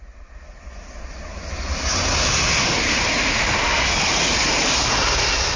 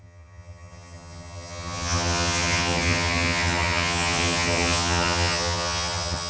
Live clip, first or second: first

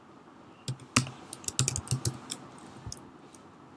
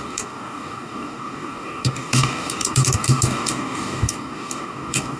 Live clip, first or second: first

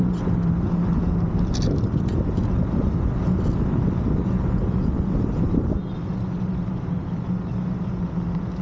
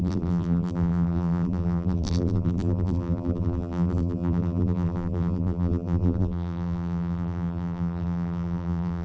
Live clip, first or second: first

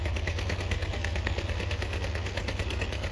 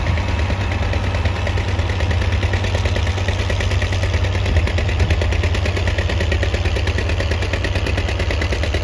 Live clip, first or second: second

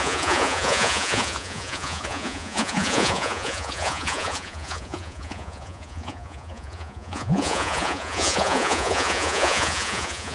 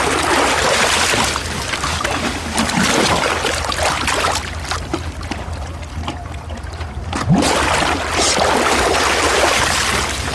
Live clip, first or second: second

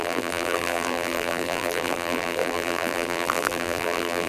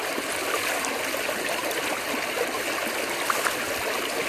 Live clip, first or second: second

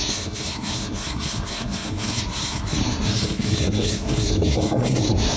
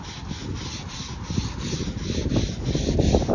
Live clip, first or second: second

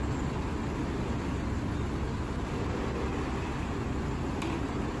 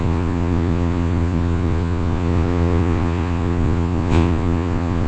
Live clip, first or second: first